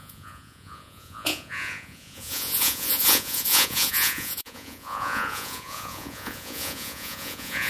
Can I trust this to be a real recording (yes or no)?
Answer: no